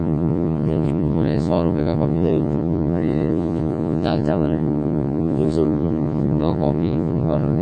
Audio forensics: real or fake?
fake